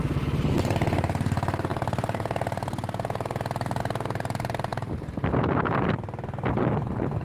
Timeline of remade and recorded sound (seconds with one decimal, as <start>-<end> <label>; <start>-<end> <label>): 0.0-7.2 recorded